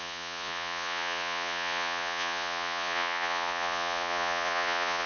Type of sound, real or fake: fake